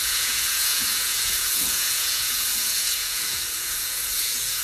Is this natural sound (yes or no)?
no